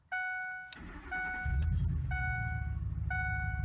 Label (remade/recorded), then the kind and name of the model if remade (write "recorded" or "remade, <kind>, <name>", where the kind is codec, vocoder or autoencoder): recorded